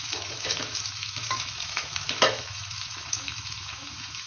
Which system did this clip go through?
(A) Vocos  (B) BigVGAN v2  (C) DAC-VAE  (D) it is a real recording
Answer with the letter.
C